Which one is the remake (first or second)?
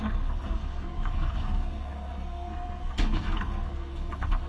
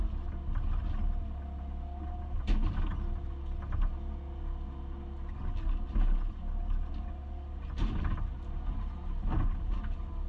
first